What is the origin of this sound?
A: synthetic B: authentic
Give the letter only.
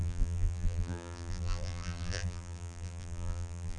A